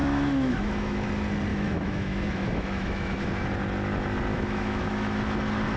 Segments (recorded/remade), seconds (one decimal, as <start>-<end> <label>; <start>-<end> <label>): 0.0-1.1 remade; 1.1-1.5 recorded; 1.5-3.3 remade; 3.3-4.3 recorded; 4.3-5.2 remade; 5.2-5.8 recorded